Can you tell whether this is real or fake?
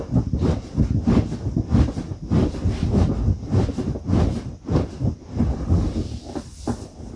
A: real